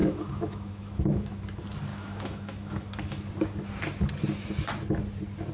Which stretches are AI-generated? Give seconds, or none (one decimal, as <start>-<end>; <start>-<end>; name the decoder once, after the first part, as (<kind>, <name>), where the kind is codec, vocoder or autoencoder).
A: 0.0-1.4 (autoencoder, DAC-VAE); 1.9-3.3